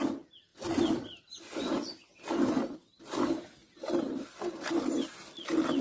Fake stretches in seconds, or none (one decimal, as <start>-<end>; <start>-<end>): none